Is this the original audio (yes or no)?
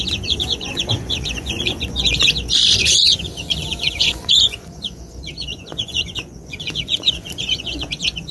no